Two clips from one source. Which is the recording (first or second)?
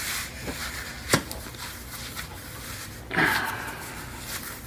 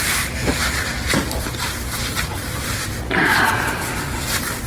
first